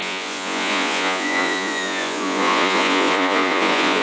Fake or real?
fake